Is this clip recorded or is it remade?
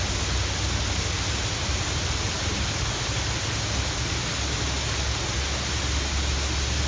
recorded